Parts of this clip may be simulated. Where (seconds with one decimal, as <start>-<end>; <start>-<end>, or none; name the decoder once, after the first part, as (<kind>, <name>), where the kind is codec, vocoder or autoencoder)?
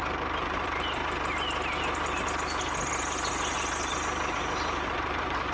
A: 0.0-1.0 (vocoder, BigVGAN v2); 4.3-5.5